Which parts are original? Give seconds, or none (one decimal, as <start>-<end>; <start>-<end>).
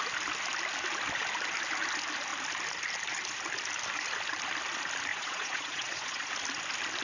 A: 0.0-5.1; 6.3-7.0